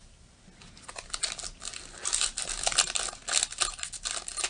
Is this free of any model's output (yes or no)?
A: yes